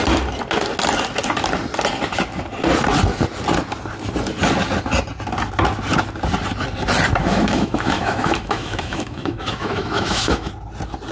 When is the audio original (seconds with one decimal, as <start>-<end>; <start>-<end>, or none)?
0.0-7.2; 10.5-11.1

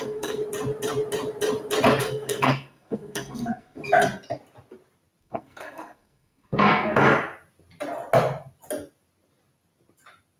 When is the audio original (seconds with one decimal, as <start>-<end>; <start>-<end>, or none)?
0.4-2.0; 3.8-5.2; 7.1-10.4